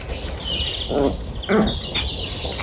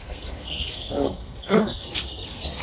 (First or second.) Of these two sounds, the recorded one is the first